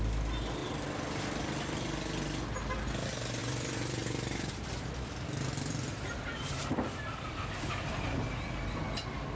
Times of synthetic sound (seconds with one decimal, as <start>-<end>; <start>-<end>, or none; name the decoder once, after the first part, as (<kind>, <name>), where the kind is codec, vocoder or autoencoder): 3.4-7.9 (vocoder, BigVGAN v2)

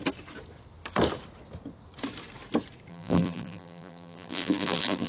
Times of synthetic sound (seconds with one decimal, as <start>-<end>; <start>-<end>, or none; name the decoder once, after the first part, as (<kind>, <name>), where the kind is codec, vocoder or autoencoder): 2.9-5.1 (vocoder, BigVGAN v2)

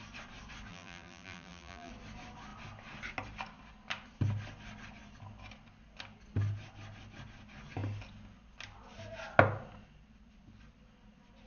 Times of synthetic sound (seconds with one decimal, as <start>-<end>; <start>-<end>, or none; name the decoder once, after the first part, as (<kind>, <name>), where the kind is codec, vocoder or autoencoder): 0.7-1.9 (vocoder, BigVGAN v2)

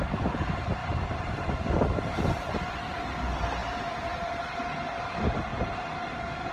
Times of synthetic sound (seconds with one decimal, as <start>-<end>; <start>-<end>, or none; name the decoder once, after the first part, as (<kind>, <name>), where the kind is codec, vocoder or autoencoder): 0.8-1.5 (vocoder, BigVGAN v2); 3.6-4.3

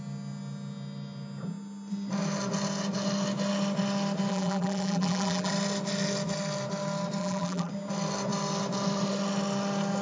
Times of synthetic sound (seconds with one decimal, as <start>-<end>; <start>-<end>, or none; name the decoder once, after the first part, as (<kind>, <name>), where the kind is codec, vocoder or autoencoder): 4.3-5.5 (vocoder, BigVGAN v2); 7.2-7.7

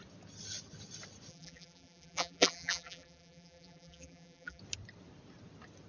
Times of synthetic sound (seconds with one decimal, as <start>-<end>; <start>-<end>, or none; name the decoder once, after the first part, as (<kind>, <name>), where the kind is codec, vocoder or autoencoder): 1.3-4.6 (vocoder, BigVGAN v2)

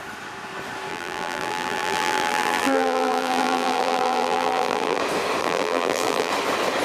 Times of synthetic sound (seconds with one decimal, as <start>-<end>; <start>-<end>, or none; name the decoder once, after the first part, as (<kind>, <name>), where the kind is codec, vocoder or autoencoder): 0.9-5.0 (vocoder, BigVGAN v2); 5.4-6.3